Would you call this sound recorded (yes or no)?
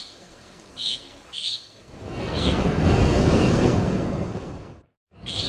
no